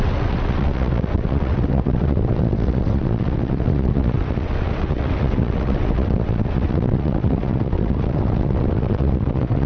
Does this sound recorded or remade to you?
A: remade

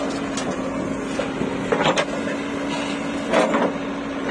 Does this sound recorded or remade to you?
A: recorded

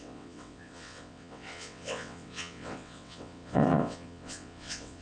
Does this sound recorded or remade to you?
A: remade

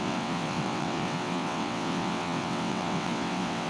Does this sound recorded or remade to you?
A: remade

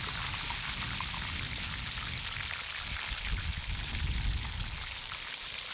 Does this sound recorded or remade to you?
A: recorded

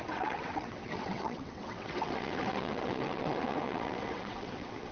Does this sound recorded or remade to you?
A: remade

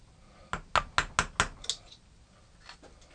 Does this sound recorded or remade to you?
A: recorded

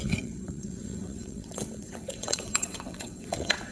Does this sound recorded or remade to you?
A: remade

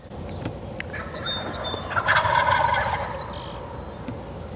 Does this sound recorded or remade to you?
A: recorded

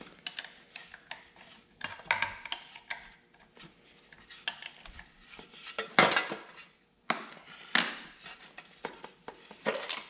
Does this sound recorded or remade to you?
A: recorded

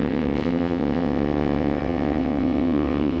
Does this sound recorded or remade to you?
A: remade